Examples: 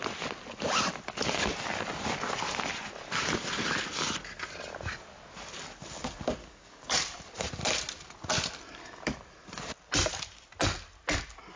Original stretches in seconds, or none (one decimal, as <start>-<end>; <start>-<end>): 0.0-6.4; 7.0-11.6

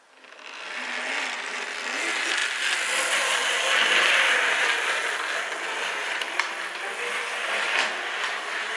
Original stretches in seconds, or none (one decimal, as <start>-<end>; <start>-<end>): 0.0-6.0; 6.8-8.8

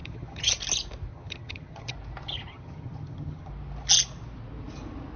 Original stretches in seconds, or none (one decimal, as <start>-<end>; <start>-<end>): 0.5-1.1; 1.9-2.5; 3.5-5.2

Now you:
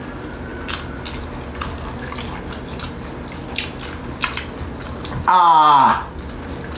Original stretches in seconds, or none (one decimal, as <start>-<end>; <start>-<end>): 0.0-6.8

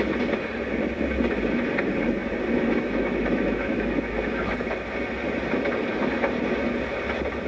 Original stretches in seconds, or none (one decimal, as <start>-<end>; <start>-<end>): 0.0-2.2; 4.5-7.5